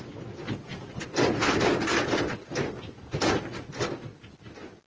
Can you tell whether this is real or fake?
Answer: real